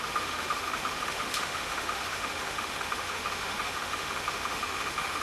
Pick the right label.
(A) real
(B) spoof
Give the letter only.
B